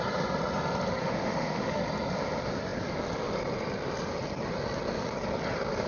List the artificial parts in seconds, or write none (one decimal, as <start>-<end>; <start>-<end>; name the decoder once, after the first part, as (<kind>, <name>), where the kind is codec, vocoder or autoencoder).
1.0-1.8 (autoencoder, DAC-VAE)